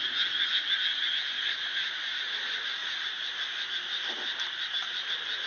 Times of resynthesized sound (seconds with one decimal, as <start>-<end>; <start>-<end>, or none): 0.9-2.3; 2.8-3.7